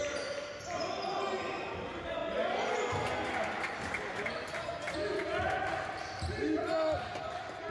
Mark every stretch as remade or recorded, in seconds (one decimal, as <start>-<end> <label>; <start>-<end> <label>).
0.0-7.7 recorded